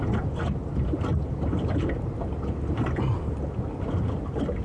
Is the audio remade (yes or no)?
no